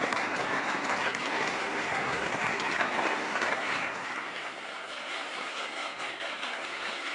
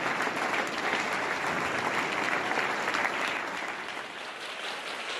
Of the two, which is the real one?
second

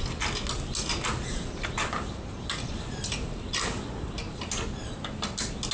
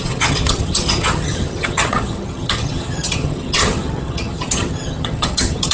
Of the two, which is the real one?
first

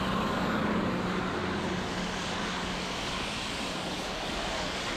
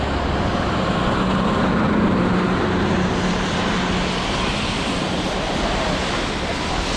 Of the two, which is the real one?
second